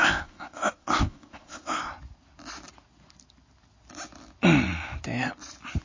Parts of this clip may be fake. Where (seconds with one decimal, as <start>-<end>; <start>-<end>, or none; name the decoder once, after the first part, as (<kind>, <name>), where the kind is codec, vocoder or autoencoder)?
0.0-1.9 (codec, ZipCodec)